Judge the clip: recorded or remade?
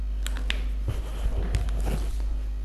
recorded